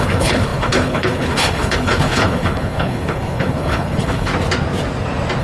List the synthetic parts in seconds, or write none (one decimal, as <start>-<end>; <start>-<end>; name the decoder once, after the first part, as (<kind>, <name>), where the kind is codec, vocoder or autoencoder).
0.0-4.3 (codec, HILCodec)